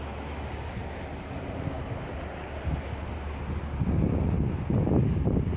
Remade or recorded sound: recorded